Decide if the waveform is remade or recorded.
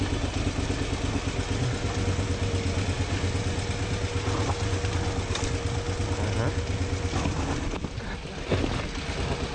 recorded